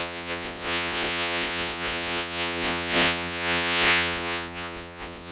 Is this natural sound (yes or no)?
no